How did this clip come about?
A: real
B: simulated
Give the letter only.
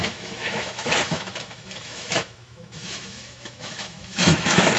B